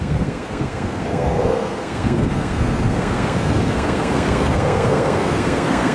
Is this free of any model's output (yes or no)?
no